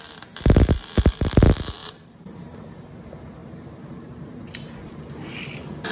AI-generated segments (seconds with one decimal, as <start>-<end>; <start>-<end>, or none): 1.8-3.0; 3.4-5.0

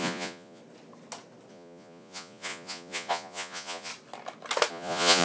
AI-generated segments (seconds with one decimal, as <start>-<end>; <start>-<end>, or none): 0.0-0.6; 1.5-3.9; 4.7-5.2